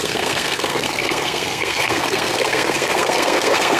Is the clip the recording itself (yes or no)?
no